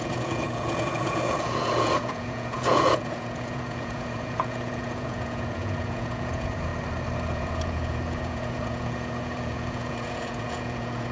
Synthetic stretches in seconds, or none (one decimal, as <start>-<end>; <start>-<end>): 0.0-6.7; 7.3-11.1